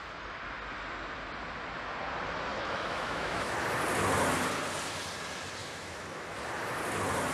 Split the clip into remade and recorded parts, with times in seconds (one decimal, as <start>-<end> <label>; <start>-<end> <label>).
0.0-2.5 recorded; 2.5-3.5 remade; 3.5-5.6 recorded; 5.6-6.3 remade; 6.3-7.3 recorded

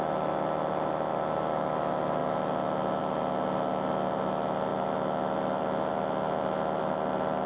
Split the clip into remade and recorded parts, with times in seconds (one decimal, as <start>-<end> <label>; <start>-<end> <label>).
0.0-7.5 recorded

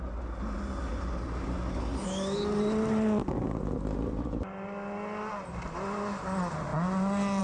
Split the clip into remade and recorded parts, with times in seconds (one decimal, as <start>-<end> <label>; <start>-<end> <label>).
0.0-7.4 recorded